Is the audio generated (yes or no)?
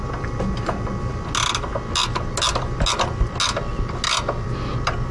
no